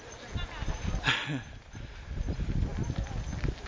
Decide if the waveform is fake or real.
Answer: real